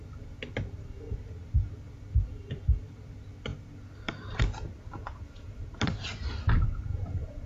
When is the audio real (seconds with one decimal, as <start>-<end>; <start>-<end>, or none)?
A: 0.0-7.5